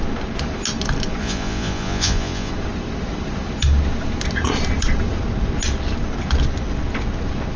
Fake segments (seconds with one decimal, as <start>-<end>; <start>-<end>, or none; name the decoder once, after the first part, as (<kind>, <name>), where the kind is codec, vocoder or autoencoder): 1.2-2.5 (vocoder, Vocos)